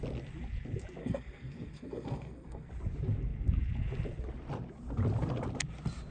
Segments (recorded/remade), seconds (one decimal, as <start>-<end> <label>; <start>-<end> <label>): 0.0-1.0 recorded; 1.0-2.7 remade; 2.7-6.1 recorded